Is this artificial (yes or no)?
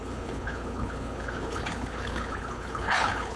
yes